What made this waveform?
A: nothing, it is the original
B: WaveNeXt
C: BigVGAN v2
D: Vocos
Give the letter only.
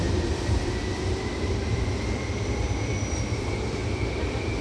C